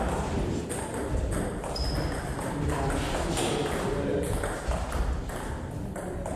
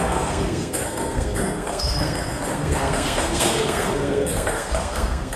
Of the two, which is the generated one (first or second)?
second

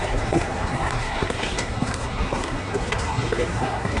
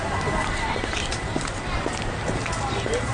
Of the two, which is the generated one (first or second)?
first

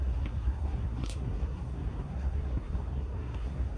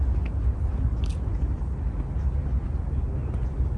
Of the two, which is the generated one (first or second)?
first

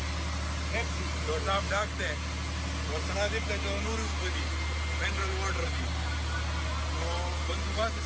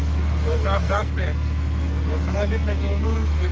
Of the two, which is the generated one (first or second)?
second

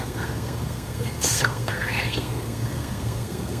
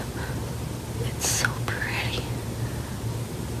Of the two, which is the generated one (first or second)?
first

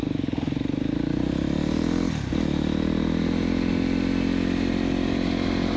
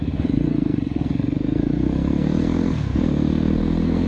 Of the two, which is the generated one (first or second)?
second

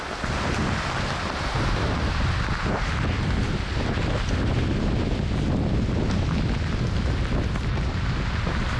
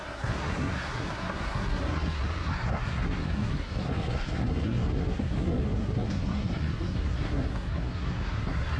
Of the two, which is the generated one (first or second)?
second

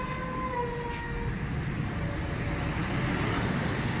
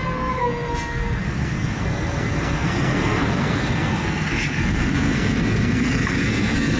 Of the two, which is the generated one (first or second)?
second